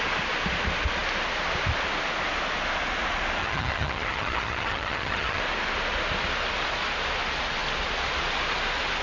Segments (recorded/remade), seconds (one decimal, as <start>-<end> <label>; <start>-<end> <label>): 0.0-3.4 recorded; 3.4-5.4 remade; 5.4-9.0 recorded